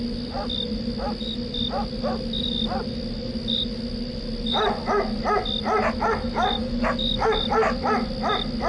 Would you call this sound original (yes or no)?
yes